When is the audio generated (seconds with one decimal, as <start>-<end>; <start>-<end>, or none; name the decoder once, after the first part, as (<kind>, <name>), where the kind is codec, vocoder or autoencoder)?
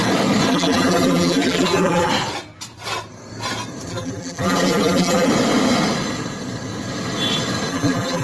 0.5-2.1 (vocoder, BigVGAN v2); 3.9-5.3; 7.7-8.2